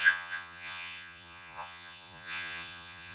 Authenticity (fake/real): fake